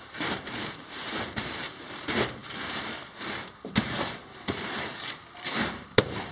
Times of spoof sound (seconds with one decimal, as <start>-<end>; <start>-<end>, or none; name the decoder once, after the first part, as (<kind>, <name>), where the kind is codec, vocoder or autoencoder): 0.0-6.3 (vocoder, BigVGAN v2)